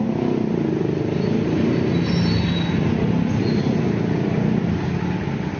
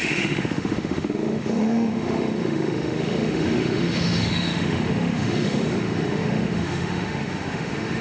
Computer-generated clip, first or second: second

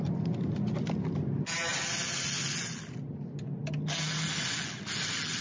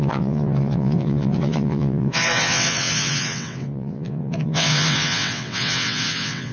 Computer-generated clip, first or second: second